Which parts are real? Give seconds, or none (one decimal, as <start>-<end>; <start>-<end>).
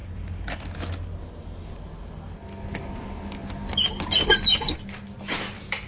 0.0-5.9